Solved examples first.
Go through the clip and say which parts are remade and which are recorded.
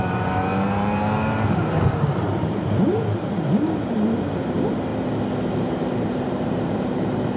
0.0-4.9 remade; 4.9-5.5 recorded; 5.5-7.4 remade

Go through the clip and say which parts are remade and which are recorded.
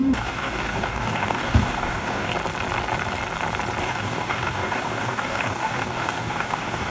0.0-2.3 remade; 2.3-3.8 recorded; 3.8-6.9 remade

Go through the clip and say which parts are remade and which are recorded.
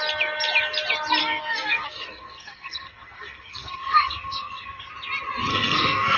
0.0-1.2 recorded; 1.2-4.9 remade; 4.9-5.5 recorded; 5.5-6.2 remade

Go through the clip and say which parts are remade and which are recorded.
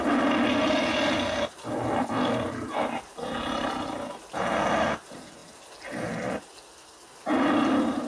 0.0-8.1 recorded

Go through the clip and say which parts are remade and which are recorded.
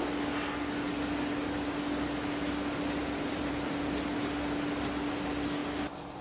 0.0-3.0 recorded; 3.0-3.8 remade; 3.8-5.6 recorded; 5.6-6.2 remade